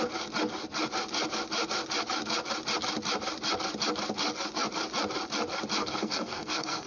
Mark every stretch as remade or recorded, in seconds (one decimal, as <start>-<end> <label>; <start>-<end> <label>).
0.0-5.8 recorded; 5.8-6.9 remade